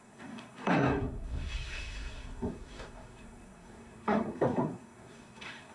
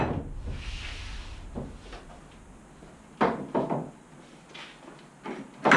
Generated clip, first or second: first